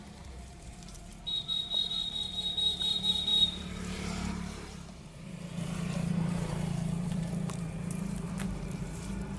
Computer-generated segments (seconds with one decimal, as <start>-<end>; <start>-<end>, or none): 0.0-1.1; 2.3-9.4